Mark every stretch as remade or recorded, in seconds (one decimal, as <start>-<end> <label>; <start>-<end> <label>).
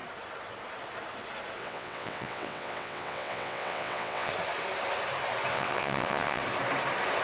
0.0-1.6 recorded; 1.6-4.3 remade; 4.3-5.5 recorded; 5.5-6.4 remade; 6.4-7.2 recorded